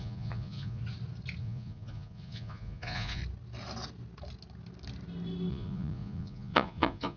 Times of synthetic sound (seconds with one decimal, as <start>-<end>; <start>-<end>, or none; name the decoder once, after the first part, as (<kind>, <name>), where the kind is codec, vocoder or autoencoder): 0.0-0.8 (vocoder, Vocos); 1.4-3.2; 5.5-7.2